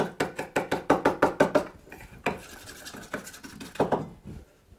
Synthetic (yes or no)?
no